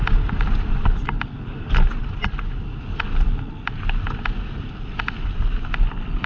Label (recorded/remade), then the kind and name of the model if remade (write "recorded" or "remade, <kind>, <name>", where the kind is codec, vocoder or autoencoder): recorded